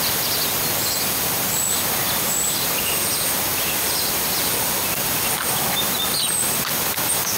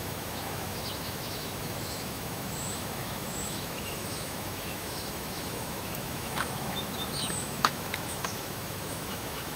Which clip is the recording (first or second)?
first